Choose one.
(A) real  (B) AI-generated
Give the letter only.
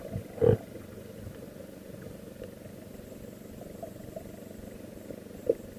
A